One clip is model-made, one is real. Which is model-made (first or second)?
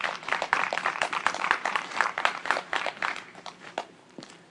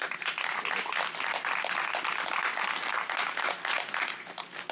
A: first